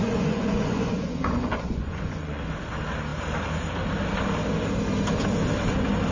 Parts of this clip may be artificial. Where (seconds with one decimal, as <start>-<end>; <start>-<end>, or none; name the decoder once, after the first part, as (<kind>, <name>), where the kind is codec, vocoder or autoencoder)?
0.0-2.4 (vocoder, Vocos)